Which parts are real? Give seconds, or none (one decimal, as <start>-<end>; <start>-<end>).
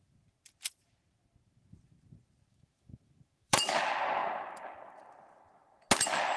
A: 0.0-2.5; 3.8-6.4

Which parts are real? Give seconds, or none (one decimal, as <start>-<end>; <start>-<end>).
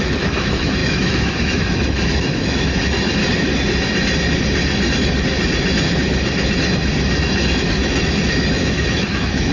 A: 3.2-8.0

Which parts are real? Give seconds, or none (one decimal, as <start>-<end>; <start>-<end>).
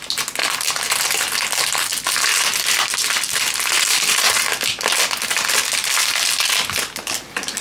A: 0.0-7.6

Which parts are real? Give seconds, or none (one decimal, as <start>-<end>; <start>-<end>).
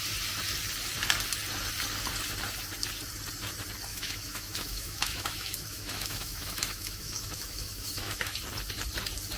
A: 0.0-3.9; 8.4-9.4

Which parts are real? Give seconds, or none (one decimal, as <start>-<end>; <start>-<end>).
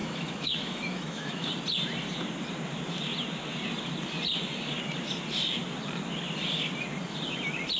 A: 1.5-7.8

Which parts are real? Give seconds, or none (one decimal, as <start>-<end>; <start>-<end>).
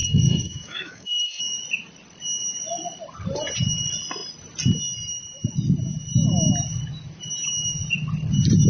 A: 1.4-8.7